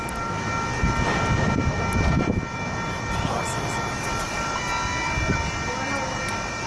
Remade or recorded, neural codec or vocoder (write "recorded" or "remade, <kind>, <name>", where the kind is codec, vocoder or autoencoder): recorded